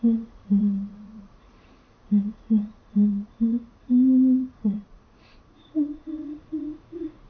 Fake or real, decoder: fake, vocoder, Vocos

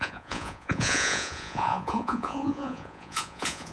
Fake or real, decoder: fake, vocoder, Vocos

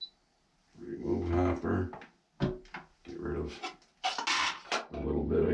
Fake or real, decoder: real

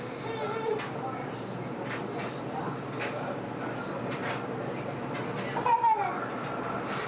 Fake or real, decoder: real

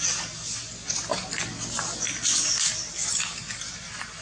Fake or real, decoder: real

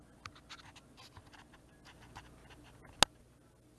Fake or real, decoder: real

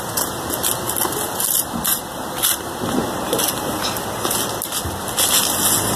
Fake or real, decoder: real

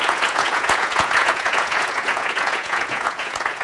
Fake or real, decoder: fake, vocoder, Vocos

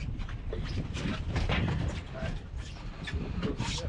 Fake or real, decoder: real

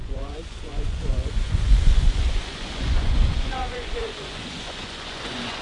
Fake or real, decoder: fake, vocoder, Vocos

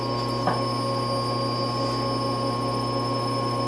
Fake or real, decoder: real